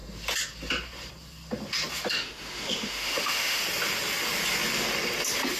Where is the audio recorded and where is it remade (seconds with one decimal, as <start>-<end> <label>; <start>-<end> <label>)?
0.0-2.1 recorded; 2.1-3.6 remade; 3.6-5.6 recorded